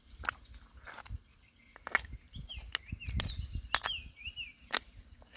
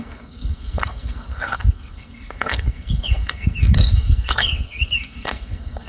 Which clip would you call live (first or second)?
first